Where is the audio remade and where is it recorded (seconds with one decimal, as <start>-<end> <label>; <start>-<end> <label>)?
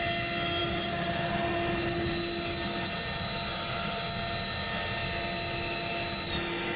0.0-6.8 recorded